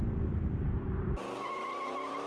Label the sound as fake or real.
fake